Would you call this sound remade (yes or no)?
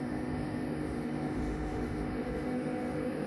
yes